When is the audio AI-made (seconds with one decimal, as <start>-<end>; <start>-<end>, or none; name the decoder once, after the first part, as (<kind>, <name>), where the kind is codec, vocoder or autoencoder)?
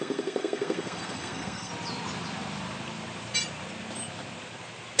0.0-1.7 (codec, SNAC)